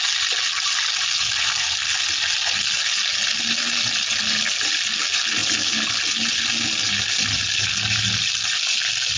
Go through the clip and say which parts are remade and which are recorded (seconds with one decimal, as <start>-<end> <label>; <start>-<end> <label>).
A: 0.0-9.2 recorded